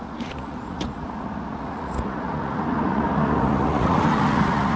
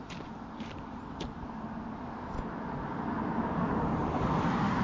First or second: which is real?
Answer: second